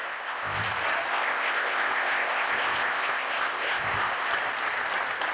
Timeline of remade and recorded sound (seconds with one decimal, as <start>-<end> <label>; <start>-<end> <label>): 0.0-0.6 remade; 0.6-1.1 recorded; 1.1-4.3 remade; 4.3-5.3 recorded